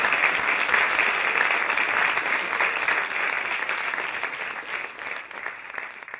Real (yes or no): yes